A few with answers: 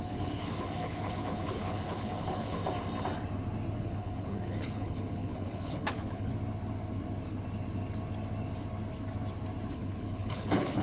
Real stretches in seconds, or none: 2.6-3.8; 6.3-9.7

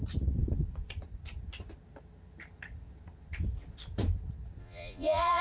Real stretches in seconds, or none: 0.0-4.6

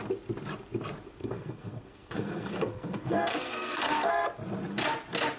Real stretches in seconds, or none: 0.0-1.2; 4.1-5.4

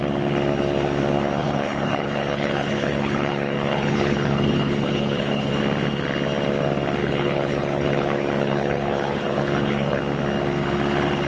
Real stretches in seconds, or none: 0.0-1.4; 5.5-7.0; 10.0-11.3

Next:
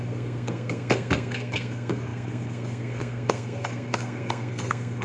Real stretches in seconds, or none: none